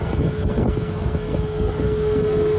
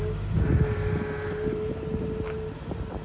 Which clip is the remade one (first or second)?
first